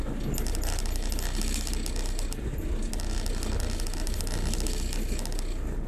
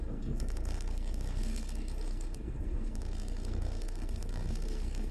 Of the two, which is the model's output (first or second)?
second